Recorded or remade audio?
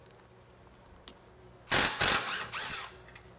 recorded